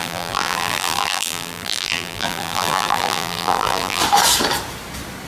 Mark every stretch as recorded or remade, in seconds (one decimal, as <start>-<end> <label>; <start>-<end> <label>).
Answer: 0.0-4.0 remade; 4.0-5.3 recorded